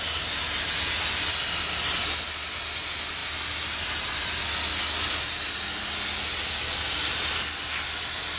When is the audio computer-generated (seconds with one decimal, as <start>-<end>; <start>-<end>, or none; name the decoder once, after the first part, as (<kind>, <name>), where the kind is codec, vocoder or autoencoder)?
none